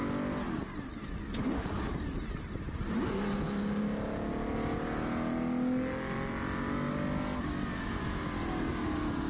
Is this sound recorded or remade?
recorded